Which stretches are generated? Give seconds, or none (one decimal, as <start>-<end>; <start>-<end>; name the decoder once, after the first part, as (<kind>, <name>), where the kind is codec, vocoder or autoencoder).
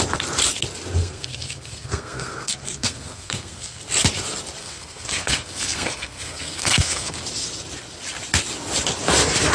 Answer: 1.0-3.8 (codec, SNAC); 4.6-7.2